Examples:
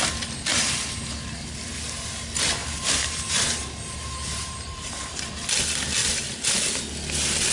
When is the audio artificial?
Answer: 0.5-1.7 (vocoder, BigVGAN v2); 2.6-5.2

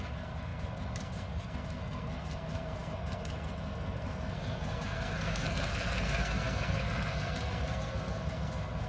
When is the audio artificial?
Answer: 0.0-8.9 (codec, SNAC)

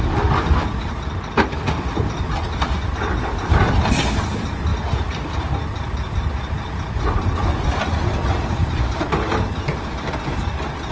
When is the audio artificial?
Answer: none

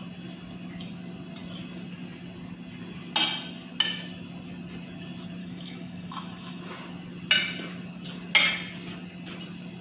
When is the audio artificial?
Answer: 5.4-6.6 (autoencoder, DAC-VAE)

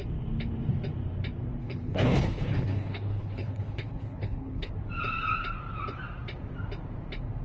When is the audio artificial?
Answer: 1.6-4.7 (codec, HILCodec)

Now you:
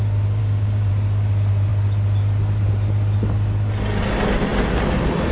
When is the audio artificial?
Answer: 0.4-0.9 (codec, DAC)

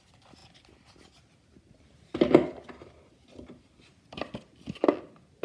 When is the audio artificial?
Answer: none

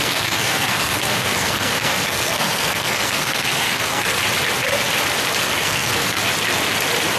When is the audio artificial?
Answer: 0.0-4.2 (codec, SNAC); 5.4-6.2